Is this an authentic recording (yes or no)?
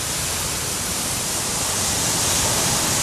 yes